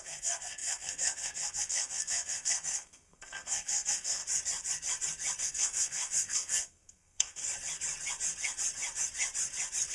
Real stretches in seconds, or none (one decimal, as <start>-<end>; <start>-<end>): 4.2-5.4; 7.4-9.9